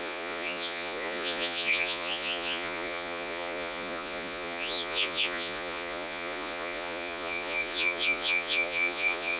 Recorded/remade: remade